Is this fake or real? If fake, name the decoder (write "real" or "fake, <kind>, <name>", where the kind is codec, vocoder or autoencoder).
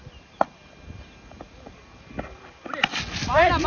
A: real